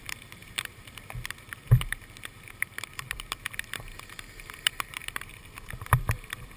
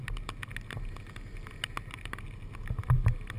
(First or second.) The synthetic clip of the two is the first